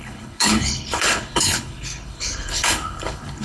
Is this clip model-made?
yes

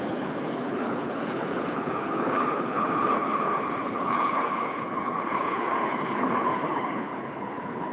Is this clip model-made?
yes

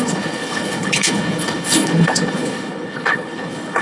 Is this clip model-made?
yes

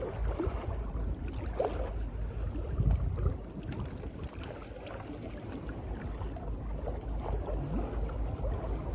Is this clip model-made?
no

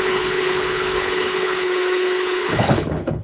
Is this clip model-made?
yes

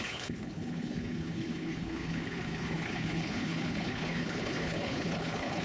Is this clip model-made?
yes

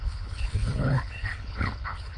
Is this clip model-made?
yes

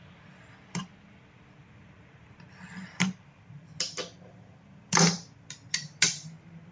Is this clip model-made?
no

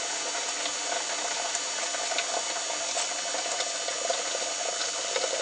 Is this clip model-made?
no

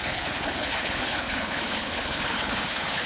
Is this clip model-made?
yes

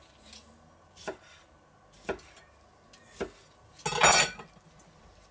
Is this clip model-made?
no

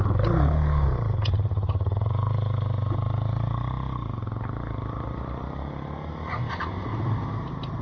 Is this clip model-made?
no